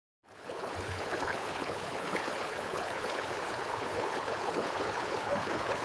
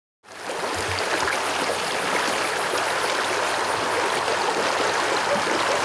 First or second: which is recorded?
second